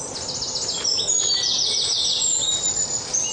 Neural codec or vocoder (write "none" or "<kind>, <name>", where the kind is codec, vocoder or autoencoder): none